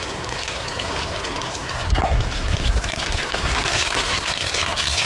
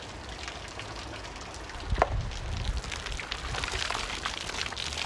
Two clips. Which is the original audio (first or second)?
second